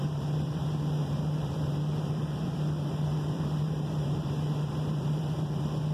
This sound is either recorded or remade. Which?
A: remade